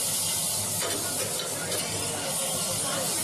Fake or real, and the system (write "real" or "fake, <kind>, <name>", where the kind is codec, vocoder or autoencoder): real